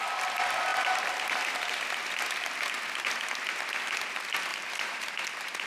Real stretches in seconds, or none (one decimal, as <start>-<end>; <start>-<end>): 0.0-4.5; 5.1-5.7